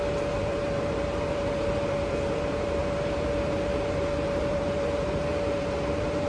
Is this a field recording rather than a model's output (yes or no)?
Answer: no